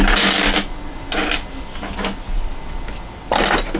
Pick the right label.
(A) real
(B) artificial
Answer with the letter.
A